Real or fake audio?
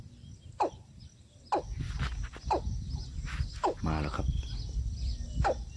real